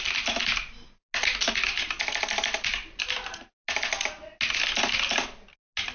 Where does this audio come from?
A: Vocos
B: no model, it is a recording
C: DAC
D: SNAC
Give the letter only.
B